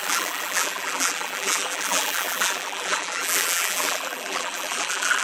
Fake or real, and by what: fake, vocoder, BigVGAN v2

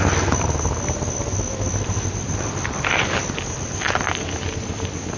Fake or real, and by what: real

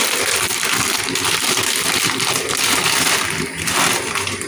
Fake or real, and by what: real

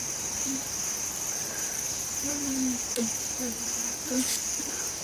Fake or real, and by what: fake, vocoder, BigVGAN v2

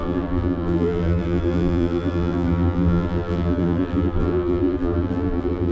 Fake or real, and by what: fake, vocoder, BigVGAN v2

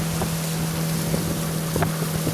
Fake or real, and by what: real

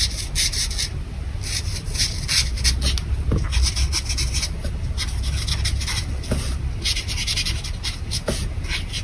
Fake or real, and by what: real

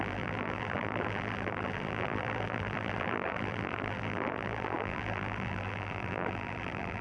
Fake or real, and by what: fake, vocoder, BigVGAN v2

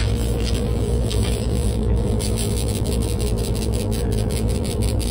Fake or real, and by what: fake, vocoder, BigVGAN v2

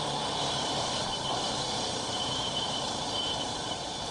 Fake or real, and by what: fake, vocoder, BigVGAN v2